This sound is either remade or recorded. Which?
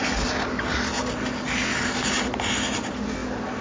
recorded